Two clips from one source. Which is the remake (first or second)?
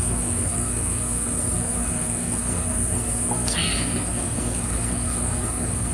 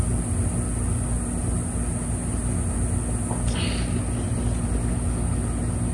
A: first